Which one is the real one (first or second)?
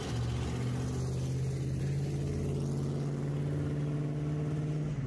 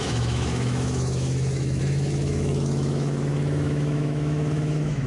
first